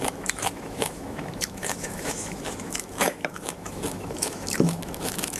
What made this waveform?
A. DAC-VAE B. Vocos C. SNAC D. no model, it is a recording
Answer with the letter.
A